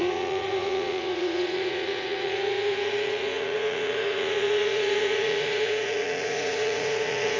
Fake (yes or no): yes